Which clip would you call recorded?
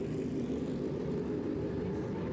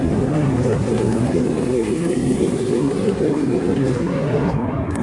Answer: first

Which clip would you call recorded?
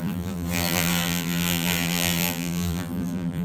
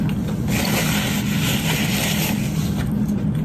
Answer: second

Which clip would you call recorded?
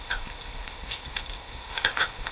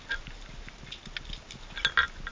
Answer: second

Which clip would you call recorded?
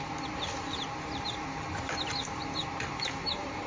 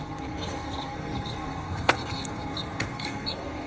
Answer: first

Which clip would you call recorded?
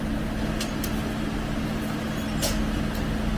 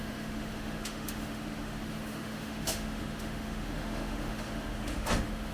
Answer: first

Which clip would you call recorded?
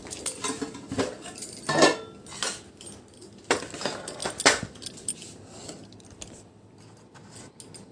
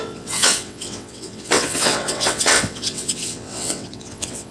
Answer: first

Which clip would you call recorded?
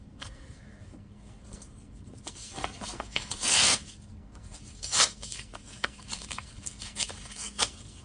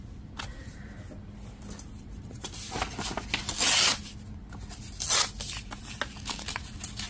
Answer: second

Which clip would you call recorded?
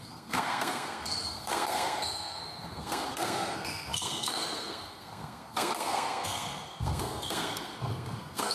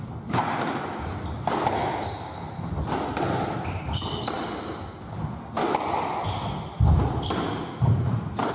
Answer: second